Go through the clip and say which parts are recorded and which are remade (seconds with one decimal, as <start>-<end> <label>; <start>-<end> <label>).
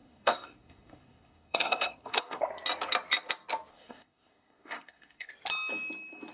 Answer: 0.0-2.4 remade; 2.4-3.7 recorded; 3.7-5.3 remade; 5.3-6.3 recorded